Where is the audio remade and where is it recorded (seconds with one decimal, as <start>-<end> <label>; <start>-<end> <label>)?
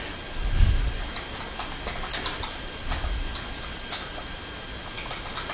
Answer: 0.0-5.5 recorded